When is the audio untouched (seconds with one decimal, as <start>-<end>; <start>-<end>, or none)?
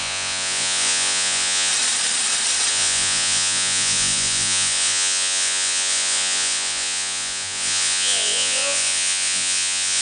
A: 1.7-2.7